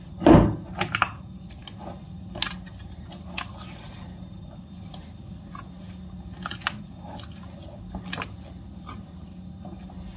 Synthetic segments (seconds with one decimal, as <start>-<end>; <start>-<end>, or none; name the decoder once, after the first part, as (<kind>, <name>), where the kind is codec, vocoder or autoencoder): none